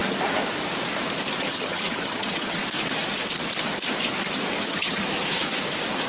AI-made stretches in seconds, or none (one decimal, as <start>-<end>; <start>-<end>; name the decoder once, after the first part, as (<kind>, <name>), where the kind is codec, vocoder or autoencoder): 1.5-2.6 (vocoder, HiFi-GAN); 4.5-5.0